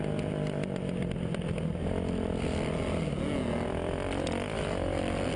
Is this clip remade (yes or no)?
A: no